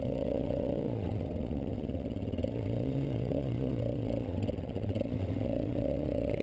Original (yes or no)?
no